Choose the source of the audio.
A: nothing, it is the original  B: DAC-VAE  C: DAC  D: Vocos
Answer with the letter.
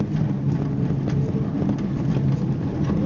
A